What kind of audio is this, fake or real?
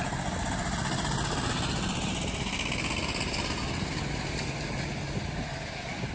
real